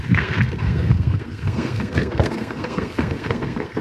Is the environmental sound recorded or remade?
remade